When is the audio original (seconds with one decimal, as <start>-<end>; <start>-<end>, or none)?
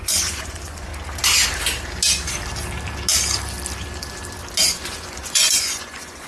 0.9-4.7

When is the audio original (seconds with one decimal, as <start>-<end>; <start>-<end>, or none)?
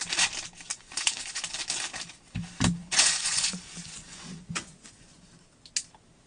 0.0-0.7; 1.4-2.8; 5.3-6.3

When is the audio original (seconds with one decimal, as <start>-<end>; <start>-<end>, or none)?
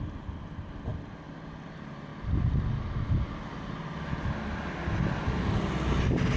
0.0-6.4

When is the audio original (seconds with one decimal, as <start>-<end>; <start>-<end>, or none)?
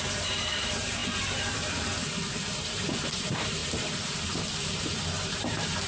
1.9-2.5